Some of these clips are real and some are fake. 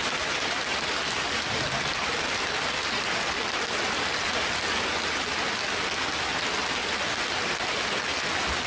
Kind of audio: real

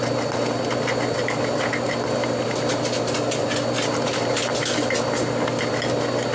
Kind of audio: real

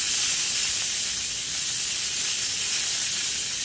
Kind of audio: real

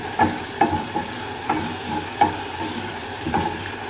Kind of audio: fake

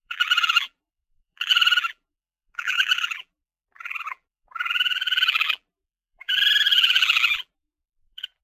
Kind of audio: fake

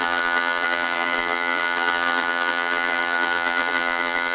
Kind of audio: fake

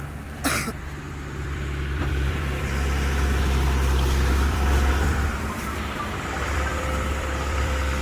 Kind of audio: fake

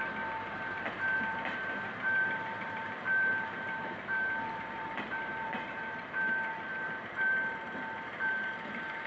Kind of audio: fake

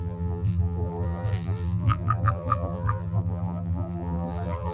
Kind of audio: fake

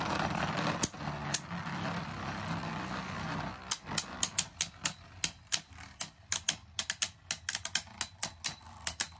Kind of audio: real